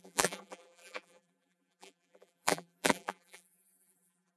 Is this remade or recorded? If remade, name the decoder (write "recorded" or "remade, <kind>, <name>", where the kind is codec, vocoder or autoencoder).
remade, vocoder, BigVGAN v2